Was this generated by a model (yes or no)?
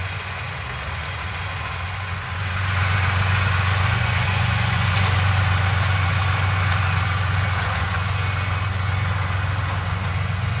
yes